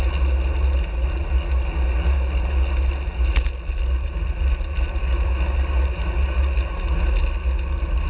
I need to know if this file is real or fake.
real